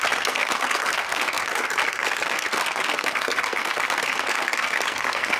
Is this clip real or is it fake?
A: fake